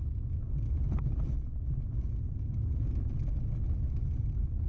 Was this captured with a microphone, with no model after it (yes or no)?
yes